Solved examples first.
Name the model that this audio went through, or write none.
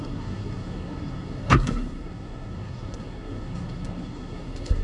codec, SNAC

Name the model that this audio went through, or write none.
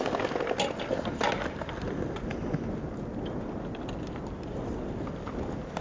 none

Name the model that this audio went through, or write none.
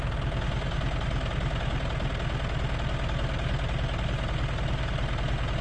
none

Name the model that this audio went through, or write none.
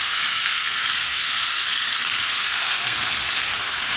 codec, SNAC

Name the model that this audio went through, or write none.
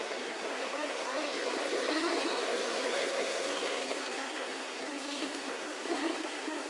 codec, SNAC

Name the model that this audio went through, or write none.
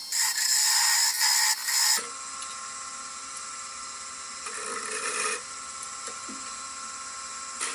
none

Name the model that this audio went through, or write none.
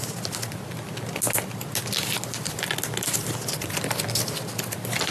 none